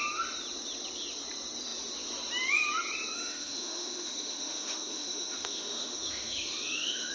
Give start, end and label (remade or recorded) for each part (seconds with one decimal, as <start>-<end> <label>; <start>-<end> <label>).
0.0-3.1 recorded; 3.1-7.1 remade